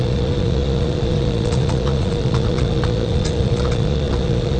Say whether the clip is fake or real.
fake